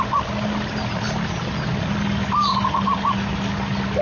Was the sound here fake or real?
real